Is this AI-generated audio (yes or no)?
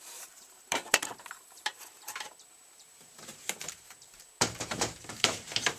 yes